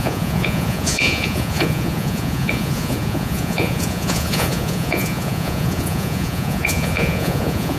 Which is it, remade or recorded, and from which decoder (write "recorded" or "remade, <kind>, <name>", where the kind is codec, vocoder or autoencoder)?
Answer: remade, vocoder, Vocos